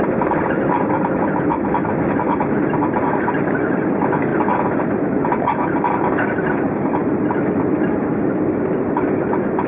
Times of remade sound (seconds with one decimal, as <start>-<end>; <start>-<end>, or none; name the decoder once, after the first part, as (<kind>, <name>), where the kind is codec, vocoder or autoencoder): none